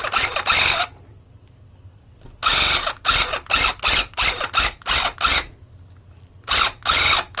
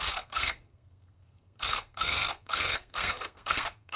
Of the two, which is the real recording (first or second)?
first